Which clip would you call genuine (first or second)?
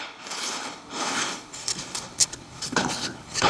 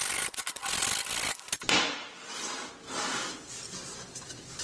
second